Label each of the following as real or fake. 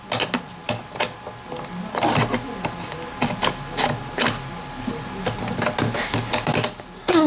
real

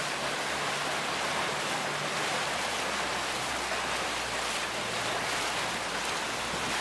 real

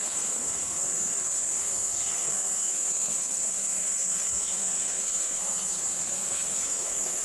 fake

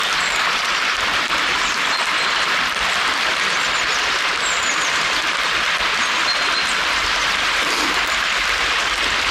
fake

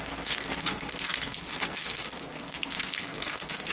fake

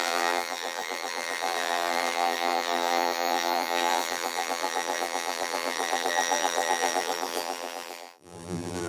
fake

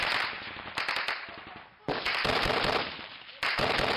real